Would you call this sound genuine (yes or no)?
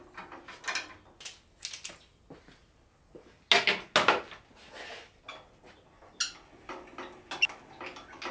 yes